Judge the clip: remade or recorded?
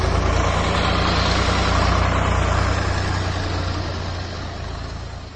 recorded